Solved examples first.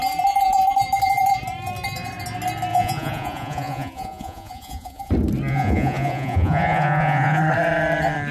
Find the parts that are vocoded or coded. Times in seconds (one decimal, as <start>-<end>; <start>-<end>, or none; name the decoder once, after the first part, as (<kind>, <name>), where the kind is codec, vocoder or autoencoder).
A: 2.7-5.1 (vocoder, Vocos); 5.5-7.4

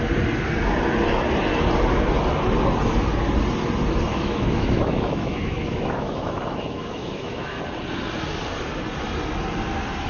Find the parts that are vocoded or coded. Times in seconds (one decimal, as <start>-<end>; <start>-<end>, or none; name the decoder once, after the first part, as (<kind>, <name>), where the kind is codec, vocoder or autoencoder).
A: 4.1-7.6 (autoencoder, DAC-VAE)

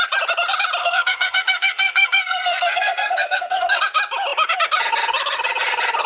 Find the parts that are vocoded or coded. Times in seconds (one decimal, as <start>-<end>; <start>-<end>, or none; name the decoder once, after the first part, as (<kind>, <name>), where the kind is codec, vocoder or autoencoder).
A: 0.8-3.8 (codec, SNAC)

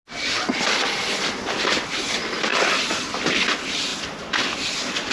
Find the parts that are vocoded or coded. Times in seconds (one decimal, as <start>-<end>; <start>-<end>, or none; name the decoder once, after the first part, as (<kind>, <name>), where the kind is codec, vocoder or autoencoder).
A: none